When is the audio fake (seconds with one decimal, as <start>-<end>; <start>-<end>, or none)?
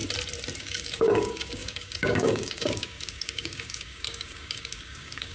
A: 0.6-5.3